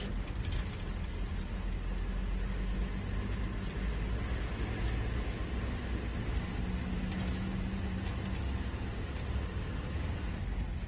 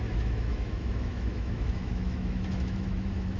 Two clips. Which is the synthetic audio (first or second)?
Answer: second